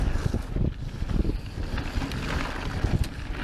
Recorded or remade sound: recorded